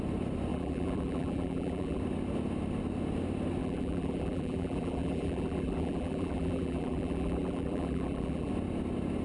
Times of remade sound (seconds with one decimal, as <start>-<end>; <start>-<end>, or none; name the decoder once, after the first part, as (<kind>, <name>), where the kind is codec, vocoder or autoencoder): 0.5-2.0 (vocoder, BigVGAN v2); 3.6-8.5